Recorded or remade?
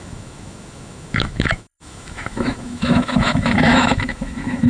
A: remade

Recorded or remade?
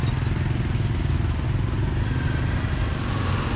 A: recorded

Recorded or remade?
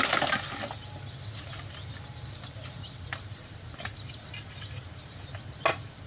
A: recorded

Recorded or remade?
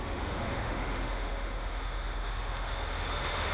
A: remade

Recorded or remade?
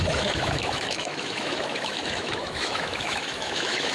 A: remade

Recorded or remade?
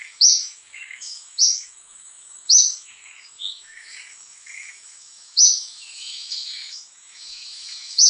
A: remade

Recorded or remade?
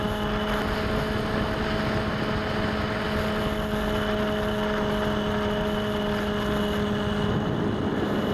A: recorded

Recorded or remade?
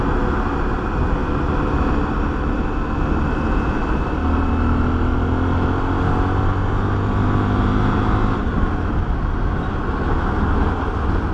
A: recorded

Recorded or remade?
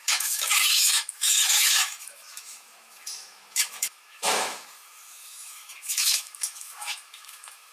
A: remade